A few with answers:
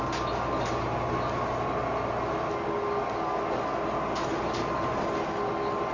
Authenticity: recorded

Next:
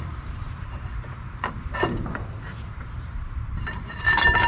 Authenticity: remade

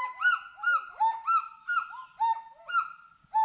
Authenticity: recorded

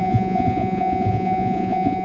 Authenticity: remade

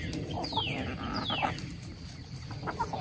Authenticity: recorded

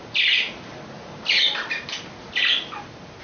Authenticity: recorded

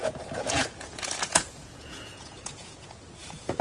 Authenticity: remade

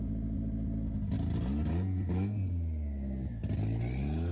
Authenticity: recorded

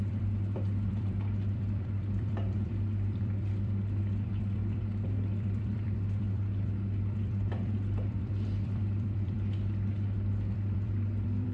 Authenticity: remade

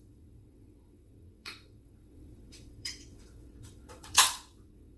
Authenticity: remade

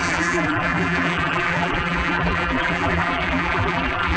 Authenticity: remade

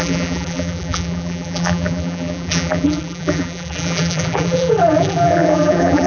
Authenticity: remade